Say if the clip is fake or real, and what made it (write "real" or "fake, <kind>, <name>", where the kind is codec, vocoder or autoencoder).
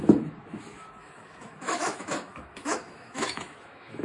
fake, autoencoder, DAC-VAE